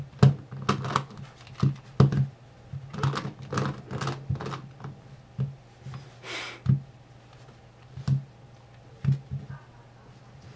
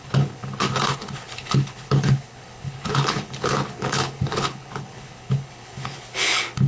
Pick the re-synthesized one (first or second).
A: second